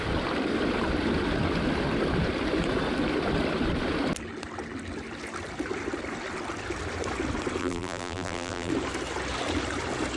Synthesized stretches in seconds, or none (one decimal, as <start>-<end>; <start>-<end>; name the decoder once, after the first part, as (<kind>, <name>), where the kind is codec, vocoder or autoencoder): 7.6-8.7 (vocoder, BigVGAN v2)